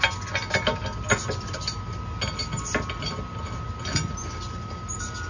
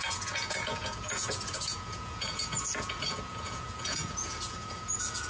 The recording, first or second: first